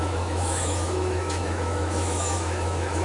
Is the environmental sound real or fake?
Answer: fake